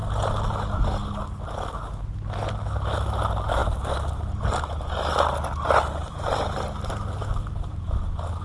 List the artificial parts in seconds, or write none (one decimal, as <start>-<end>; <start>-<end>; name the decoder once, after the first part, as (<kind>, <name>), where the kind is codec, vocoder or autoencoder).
none